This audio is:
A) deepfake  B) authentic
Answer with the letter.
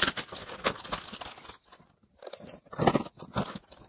B